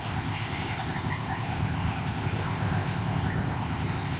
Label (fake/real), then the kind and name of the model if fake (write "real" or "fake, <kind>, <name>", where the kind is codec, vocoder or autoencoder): fake, codec, ZipCodec